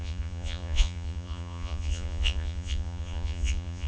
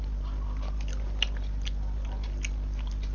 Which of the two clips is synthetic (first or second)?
first